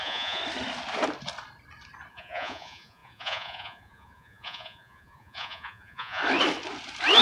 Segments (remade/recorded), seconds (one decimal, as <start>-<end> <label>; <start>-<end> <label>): 0.0-0.4 remade; 0.4-2.1 recorded; 2.1-6.2 remade; 6.2-7.2 recorded